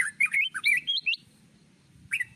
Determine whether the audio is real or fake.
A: fake